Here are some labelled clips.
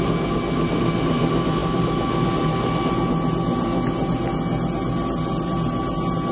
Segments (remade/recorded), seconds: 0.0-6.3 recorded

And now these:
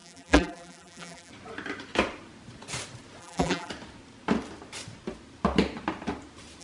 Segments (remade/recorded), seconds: 0.0-1.3 remade; 1.3-3.2 recorded; 3.2-3.7 remade; 3.7-6.6 recorded

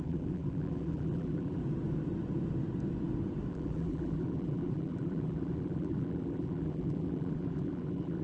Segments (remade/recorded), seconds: 0.0-1.6 remade; 1.6-3.5 recorded; 3.5-8.2 remade

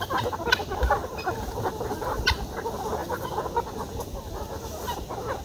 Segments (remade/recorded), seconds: 0.0-5.4 recorded

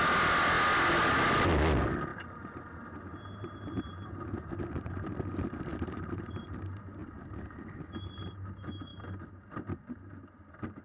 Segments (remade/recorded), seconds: 0.0-2.1 recorded; 2.1-5.1 remade; 5.1-5.7 recorded; 5.7-6.3 remade; 6.3-10.8 recorded

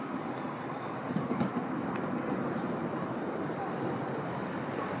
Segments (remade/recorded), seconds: 0.0-5.0 recorded